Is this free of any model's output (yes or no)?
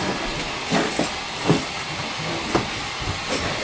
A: yes